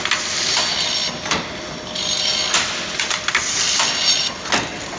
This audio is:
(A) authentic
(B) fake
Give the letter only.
A